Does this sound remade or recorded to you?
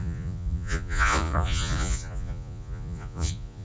remade